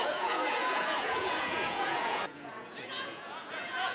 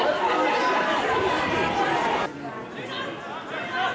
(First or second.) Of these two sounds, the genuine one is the second